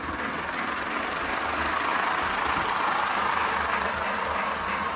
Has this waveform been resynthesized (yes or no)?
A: no